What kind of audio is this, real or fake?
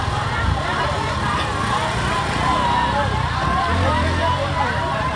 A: real